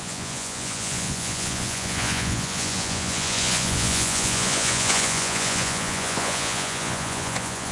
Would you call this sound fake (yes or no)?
yes